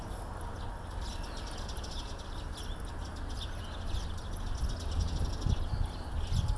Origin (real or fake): real